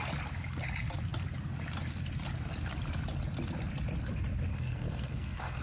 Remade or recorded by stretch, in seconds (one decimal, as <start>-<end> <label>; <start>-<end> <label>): 0.0-4.5 recorded; 4.5-5.6 remade